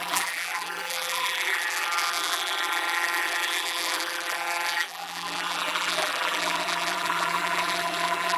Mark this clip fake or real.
fake